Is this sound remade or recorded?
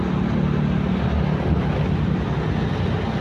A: recorded